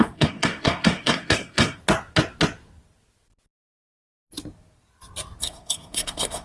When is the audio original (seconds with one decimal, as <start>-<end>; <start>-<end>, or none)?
1.8-5.4

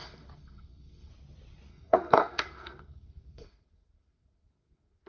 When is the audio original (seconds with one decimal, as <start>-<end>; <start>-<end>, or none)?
1.1-1.7

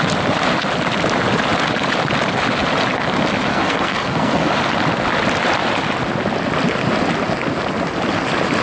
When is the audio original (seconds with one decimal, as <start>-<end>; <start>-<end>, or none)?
0.0-3.5; 4.5-8.6

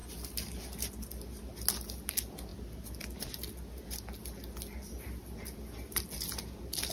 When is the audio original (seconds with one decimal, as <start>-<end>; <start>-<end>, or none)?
0.0-6.9

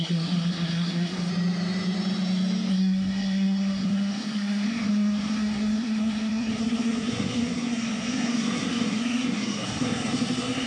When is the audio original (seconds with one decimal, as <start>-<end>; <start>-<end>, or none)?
1.3-2.7

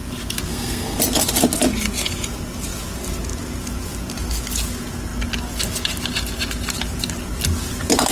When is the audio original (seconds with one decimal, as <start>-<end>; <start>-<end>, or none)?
0.0-0.5; 1.0-8.1

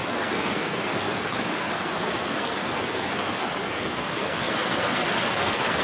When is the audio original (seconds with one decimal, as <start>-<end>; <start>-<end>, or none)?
none